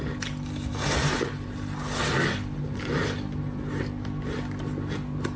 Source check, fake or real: real